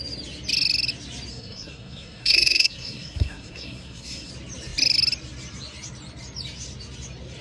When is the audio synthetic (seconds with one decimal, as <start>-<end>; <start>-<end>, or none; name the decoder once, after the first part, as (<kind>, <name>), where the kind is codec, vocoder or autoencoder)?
1.3-4.3 (codec, SNAC)